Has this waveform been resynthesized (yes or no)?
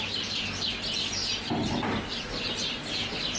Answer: no